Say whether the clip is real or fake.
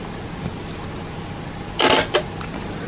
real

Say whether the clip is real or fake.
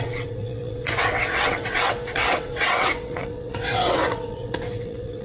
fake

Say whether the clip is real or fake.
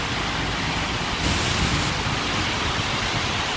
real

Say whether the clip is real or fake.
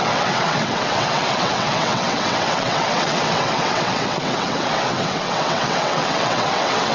fake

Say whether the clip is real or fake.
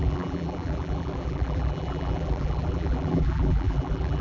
fake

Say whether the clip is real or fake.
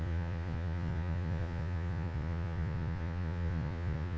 fake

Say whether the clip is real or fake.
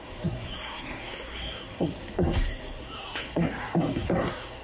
fake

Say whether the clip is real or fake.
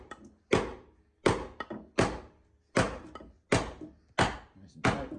real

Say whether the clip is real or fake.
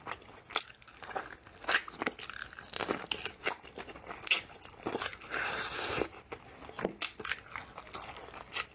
real